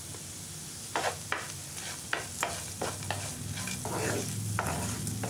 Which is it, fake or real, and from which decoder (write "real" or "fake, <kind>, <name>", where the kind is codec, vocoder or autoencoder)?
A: real